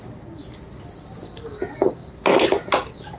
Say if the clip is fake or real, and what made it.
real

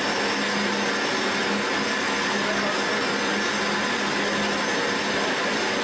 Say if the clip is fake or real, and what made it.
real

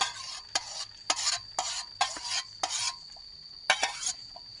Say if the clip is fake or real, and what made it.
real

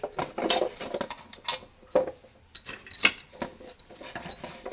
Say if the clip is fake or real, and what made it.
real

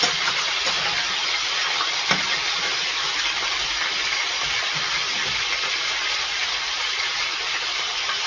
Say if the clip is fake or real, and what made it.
fake, vocoder, BigVGAN v2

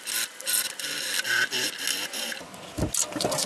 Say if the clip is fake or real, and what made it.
real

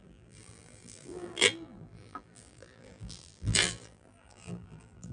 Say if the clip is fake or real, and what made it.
fake, vocoder, BigVGAN v2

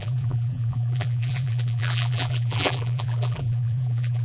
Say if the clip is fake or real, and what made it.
fake, vocoder, BigVGAN v2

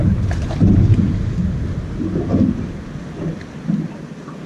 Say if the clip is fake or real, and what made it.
real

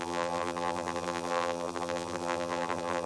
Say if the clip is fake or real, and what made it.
fake, vocoder, BigVGAN v2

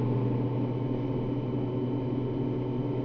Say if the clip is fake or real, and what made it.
real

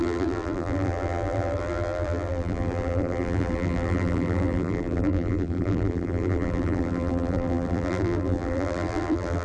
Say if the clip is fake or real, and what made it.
fake, vocoder, BigVGAN v2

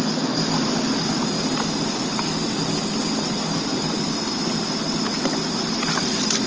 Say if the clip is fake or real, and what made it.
real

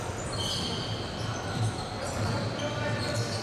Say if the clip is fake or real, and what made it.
real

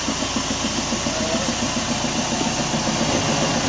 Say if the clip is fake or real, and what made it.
real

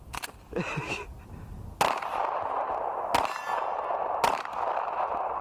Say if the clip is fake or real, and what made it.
real